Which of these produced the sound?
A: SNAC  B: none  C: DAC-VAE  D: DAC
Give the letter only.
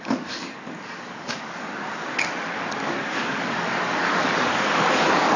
D